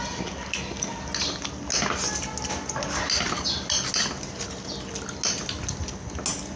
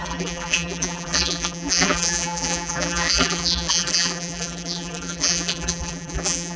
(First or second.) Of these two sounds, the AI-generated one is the second